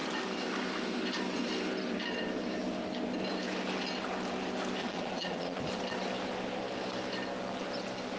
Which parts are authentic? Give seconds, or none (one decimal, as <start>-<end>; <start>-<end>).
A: 0.0-4.8; 5.6-8.2